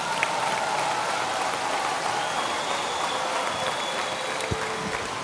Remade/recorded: recorded